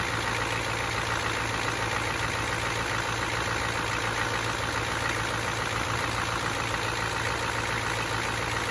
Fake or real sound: real